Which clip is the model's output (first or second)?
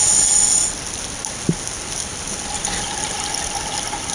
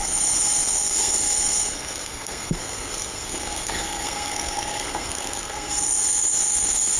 second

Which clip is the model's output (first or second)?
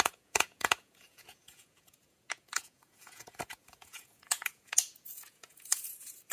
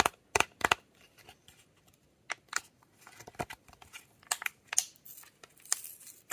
first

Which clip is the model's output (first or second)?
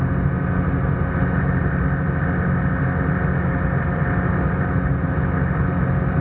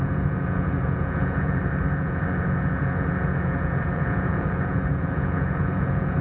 second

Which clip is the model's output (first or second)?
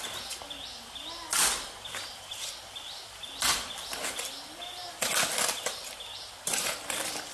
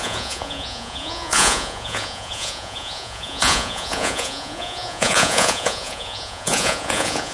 second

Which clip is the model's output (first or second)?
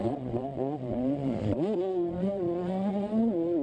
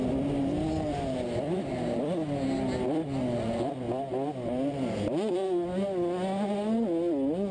first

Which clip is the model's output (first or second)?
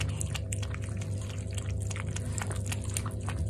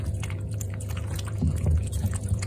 second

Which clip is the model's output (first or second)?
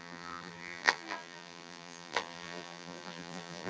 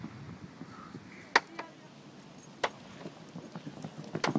first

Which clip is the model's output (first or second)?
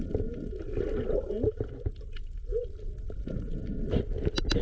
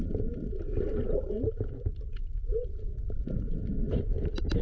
second